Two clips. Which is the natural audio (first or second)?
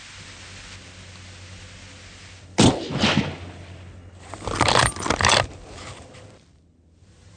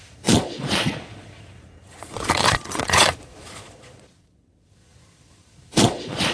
first